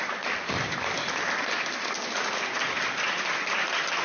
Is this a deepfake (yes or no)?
no